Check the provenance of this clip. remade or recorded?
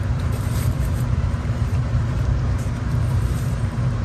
remade